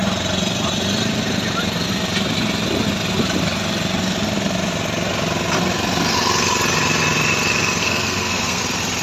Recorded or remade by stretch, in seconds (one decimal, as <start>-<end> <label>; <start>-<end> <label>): 0.0-7.8 recorded; 7.8-8.6 remade; 8.6-9.0 recorded

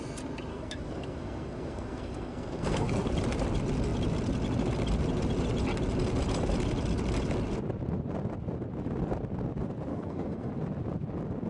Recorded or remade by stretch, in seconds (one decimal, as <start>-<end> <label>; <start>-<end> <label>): 0.0-0.5 recorded; 0.5-3.1 remade; 3.1-9.9 recorded; 9.9-10.5 remade; 10.5-11.5 recorded